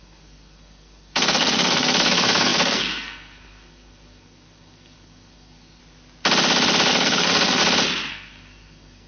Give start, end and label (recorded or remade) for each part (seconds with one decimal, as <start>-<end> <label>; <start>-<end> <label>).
0.0-5.8 remade; 5.8-6.9 recorded; 6.9-7.6 remade; 7.6-8.1 recorded; 8.1-9.1 remade